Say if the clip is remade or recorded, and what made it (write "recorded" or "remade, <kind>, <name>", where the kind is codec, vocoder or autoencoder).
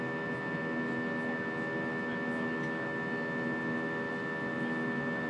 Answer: recorded